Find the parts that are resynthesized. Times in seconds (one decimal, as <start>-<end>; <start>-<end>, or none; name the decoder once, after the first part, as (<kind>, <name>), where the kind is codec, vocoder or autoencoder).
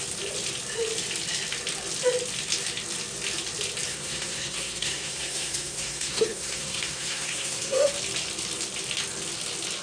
3.9-7.9 (codec, SNAC)